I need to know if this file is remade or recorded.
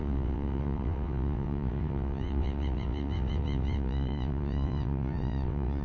remade